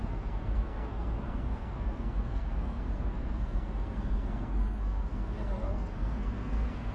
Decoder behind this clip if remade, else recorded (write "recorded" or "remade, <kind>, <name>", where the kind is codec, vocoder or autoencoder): remade, codec, SNAC